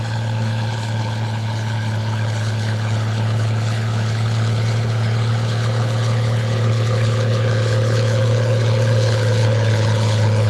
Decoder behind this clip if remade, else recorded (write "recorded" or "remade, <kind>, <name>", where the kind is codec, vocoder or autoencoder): remade, codec, HILCodec